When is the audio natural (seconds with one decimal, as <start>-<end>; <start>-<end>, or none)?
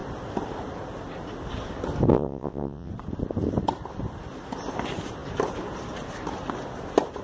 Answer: 0.0-2.1; 2.9-7.2